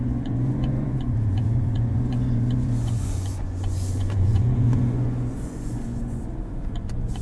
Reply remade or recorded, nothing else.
remade